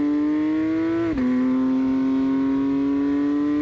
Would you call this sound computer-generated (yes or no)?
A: no